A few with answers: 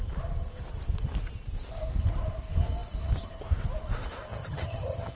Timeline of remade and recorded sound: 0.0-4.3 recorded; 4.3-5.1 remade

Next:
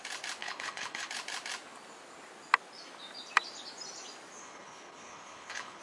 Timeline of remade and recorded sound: 0.0-0.4 recorded; 0.4-1.1 remade; 1.1-4.4 recorded; 4.4-5.8 remade

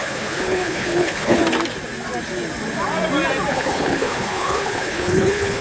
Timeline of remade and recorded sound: 0.0-1.4 remade; 1.4-3.5 recorded; 3.5-5.6 remade

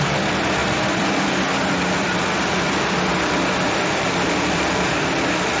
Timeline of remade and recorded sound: 0.0-3.1 remade; 3.1-3.7 recorded; 3.7-5.6 remade

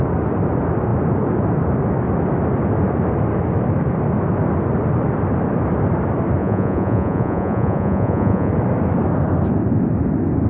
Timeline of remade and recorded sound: 0.0-6.4 recorded; 6.4-8.5 remade; 8.5-10.5 recorded